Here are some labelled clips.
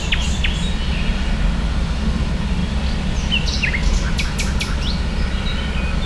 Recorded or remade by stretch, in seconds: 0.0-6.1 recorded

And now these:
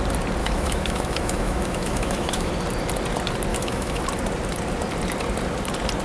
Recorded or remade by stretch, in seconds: 0.0-0.4 recorded; 0.4-2.5 remade; 2.5-3.5 recorded; 3.5-4.0 remade; 4.0-6.0 recorded

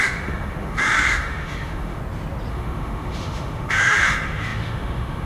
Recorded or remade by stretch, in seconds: 0.0-2.0 remade; 2.0-2.5 recorded; 2.5-5.3 remade

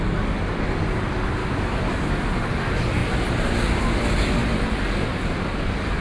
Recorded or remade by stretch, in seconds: 0.0-1.4 recorded; 1.4-2.2 remade; 2.2-6.0 recorded

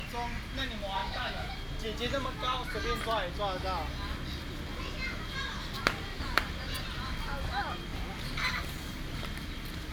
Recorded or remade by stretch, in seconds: 0.0-1.0 recorded; 1.0-1.5 remade; 1.5-9.9 recorded